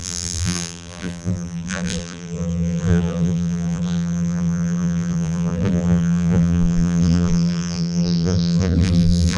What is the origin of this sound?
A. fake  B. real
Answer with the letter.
A